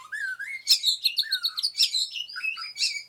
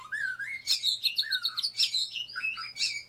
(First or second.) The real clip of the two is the first